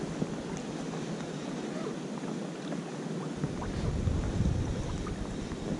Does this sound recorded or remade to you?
recorded